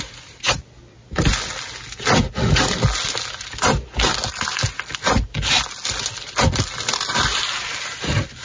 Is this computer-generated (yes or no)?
no